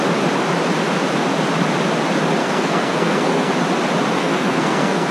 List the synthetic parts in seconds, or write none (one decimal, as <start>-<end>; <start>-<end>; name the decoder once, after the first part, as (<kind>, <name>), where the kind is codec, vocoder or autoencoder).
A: 2.4-3.5 (codec, SNAC); 4.2-5.1